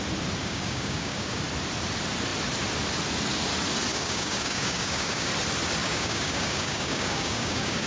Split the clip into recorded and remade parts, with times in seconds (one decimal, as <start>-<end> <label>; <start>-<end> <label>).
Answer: 0.0-0.4 recorded; 0.4-1.4 remade; 1.4-3.9 recorded; 3.9-5.3 remade; 5.3-5.8 recorded; 5.8-7.9 remade